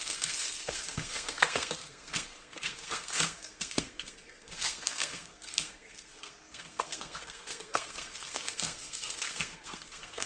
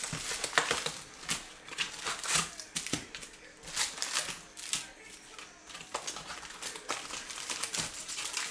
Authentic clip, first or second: second